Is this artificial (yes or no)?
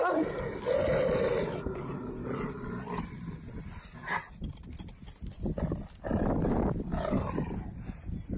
no